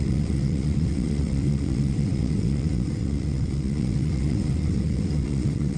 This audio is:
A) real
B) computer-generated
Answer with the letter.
B